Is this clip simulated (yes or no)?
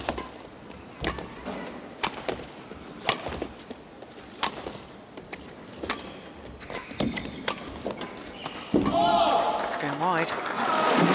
no